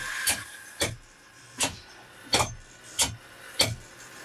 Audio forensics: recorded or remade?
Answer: recorded